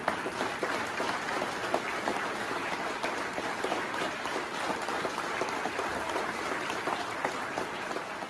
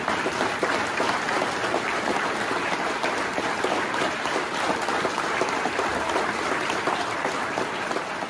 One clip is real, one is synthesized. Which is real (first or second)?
first